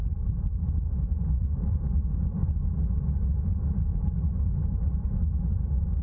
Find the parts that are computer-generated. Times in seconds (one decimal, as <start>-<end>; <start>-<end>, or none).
1.0-2.0; 5.6-6.0